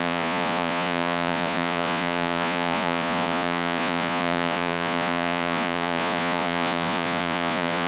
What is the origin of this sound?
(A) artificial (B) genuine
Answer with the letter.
A